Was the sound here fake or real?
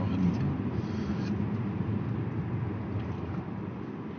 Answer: real